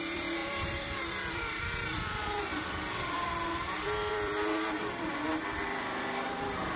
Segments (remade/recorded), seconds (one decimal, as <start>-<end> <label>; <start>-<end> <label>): 0.0-6.8 remade

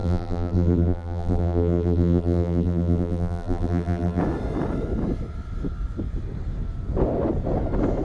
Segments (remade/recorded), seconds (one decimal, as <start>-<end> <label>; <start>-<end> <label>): 0.0-4.2 remade; 4.2-8.0 recorded

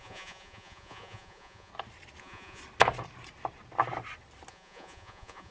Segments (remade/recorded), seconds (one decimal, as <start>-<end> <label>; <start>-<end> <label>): 0.0-1.7 remade; 1.7-2.2 recorded; 2.2-2.6 remade; 2.6-4.5 recorded; 4.5-5.5 remade

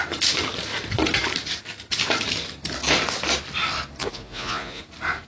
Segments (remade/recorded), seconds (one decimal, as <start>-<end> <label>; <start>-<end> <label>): 0.0-4.0 recorded; 4.0-4.8 remade; 4.8-5.3 recorded

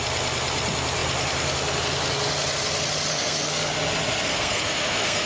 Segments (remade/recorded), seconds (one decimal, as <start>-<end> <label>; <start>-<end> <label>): 0.0-3.1 recorded; 3.1-3.7 remade; 3.7-4.3 recorded; 4.3-5.3 remade